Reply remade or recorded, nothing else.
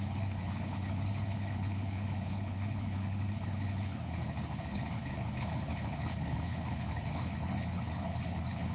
remade